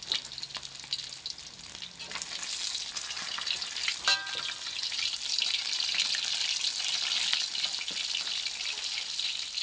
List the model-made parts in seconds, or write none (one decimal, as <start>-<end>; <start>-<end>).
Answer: none